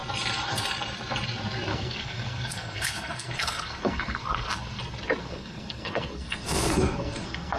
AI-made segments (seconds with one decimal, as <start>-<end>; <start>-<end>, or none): 1.7-4.8; 5.2-7.6